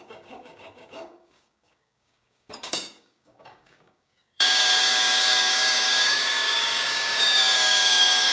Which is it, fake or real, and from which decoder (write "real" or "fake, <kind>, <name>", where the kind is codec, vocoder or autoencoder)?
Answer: fake, codec, DAC